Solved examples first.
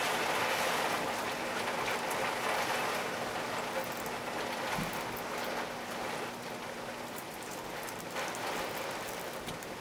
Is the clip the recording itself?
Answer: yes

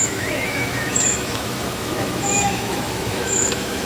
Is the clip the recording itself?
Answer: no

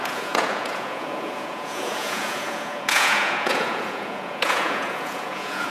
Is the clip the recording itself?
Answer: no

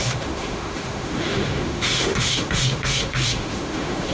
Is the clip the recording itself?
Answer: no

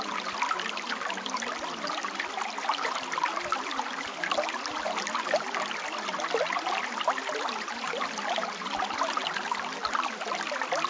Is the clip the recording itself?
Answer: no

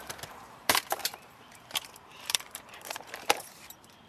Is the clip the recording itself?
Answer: no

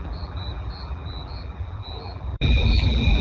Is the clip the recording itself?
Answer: no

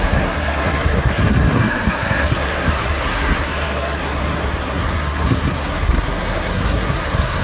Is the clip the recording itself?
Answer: no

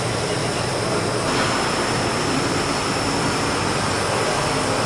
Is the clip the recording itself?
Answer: yes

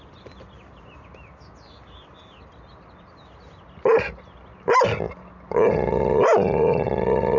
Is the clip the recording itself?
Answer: yes